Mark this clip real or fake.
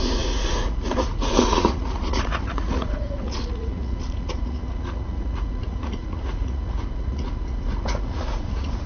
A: fake